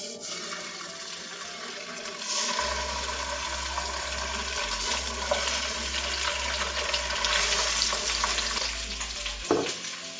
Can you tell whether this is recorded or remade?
recorded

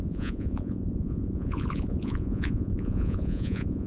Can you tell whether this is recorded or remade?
remade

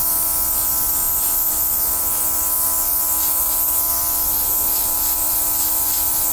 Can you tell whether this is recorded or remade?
recorded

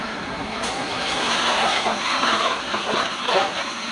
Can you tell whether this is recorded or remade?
remade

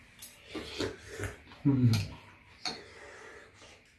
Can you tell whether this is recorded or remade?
recorded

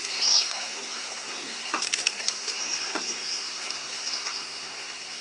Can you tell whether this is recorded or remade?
remade